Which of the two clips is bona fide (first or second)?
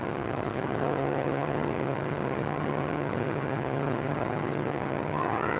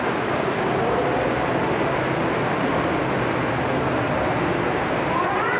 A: second